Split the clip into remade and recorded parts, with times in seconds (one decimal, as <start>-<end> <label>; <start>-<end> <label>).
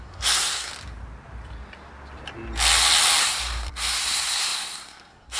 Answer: 0.0-0.7 remade; 0.7-3.2 recorded; 3.2-5.4 remade